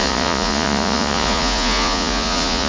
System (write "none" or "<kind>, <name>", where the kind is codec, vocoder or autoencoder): vocoder, Vocos